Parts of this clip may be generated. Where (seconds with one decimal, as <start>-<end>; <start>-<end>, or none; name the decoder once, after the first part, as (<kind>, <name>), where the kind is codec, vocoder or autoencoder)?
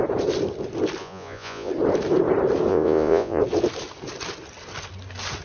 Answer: 1.0-1.7 (vocoder, Vocos); 2.7-3.4